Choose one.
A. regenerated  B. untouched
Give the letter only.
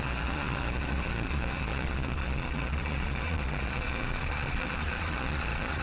A